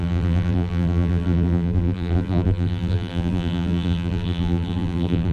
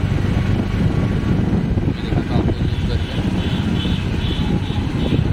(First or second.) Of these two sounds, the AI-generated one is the first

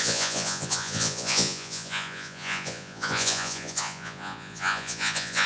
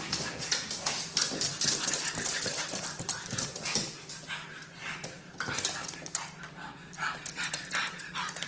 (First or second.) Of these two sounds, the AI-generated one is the first